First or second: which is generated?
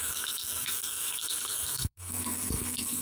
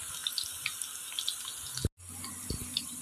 first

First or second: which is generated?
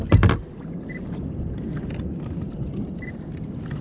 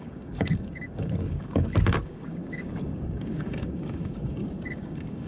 second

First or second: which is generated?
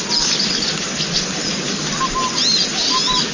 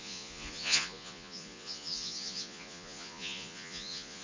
second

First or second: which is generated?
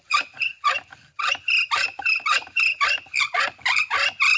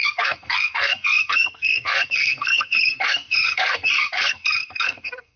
second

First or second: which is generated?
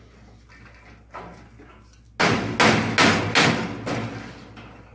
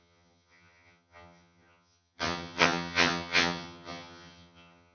second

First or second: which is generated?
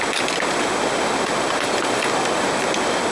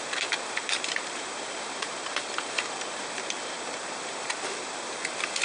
second